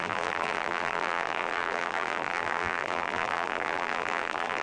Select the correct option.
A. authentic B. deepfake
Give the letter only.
B